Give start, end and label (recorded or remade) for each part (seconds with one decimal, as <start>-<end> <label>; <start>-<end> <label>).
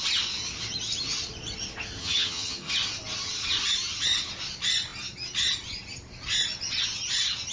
0.0-2.0 recorded; 2.0-2.7 remade; 2.7-7.5 recorded